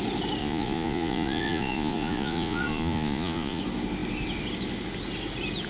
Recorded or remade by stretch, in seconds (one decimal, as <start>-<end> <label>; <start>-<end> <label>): 0.0-0.4 recorded; 0.4-3.6 remade; 3.6-5.7 recorded